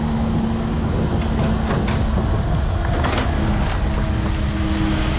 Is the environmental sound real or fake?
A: real